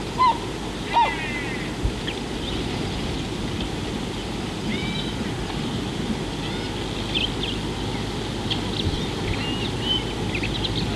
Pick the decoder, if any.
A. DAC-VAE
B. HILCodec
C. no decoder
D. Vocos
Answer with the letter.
C